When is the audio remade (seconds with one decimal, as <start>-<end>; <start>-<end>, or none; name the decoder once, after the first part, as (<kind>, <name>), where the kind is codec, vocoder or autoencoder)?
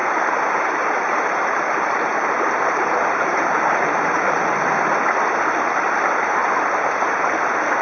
0.0-2.1 (vocoder, BigVGAN v2); 3.0-4.5